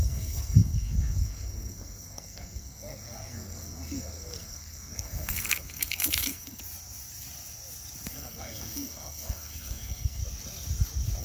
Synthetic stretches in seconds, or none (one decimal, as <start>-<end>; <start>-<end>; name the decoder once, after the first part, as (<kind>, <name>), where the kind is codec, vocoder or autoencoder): 0.0-6.6 (codec, SNAC); 8.1-10.2